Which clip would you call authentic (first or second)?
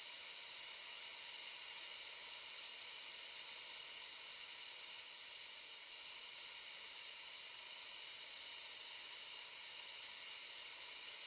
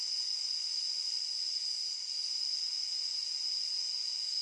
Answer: first